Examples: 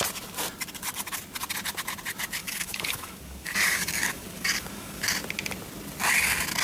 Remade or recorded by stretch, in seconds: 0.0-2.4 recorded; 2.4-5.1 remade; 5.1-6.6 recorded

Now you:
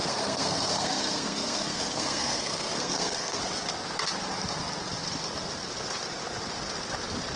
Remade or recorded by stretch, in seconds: 0.0-3.4 remade; 3.4-7.4 recorded

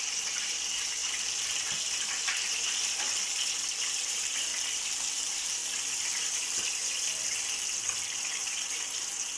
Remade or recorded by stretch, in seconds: 0.0-1.0 remade; 1.0-3.9 recorded; 3.9-4.5 remade; 4.5-5.1 recorded; 5.1-5.6 remade; 5.6-8.3 recorded; 8.3-9.4 remade

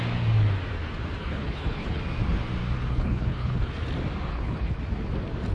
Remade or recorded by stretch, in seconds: 0.0-1.2 recorded; 1.2-2.0 remade; 2.0-2.9 recorded; 2.9-3.7 remade; 3.7-4.3 recorded; 4.3-4.8 remade; 4.8-5.5 recorded

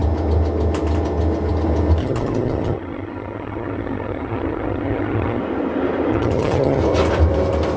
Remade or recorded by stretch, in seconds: 0.0-2.0 recorded; 2.0-5.4 remade; 5.4-6.1 recorded; 6.1-6.8 remade; 6.8-7.8 recorded

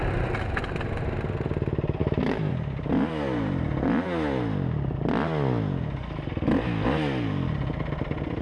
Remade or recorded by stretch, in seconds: 0.0-2.0 recorded; 2.0-2.5 remade; 2.5-8.4 recorded

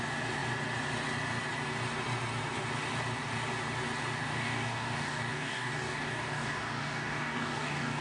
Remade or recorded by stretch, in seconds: 0.0-4.2 recorded; 4.2-8.0 remade